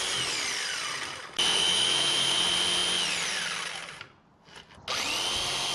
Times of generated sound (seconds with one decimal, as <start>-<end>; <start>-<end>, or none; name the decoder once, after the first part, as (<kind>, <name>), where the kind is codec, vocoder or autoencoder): 1.5-2.4 (autoencoder, DAC-VAE)